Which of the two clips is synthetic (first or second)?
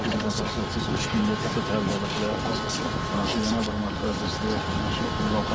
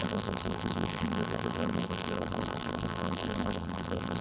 second